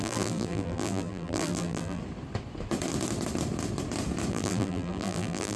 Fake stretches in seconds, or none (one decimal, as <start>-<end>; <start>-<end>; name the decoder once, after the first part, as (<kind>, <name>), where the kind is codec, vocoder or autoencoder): 0.0-2.0 (vocoder, BigVGAN v2); 4.3-5.6